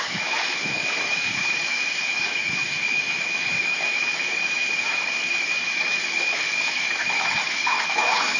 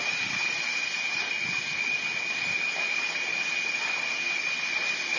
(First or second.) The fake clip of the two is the first